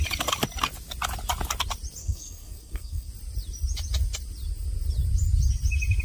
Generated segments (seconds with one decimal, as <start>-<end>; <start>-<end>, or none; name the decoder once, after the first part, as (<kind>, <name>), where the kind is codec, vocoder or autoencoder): 2.0-3.1 (codec, SNAC)